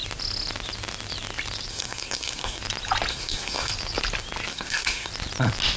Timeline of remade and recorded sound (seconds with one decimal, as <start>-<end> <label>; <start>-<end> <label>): 0.0-1.7 recorded; 1.7-2.6 remade; 2.6-3.1 recorded; 3.1-3.7 remade; 3.7-4.5 recorded; 4.5-5.1 remade; 5.1-5.8 recorded